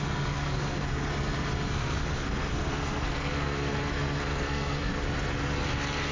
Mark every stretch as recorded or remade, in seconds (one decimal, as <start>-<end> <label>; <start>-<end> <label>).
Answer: 0.0-1.1 remade; 1.1-1.7 recorded; 1.7-4.9 remade; 4.9-6.1 recorded